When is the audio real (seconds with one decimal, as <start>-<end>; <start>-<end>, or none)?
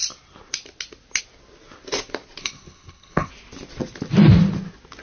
0.0-2.4; 3.3-5.0